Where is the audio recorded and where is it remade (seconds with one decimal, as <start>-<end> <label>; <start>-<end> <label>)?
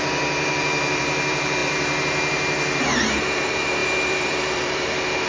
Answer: 0.0-5.3 remade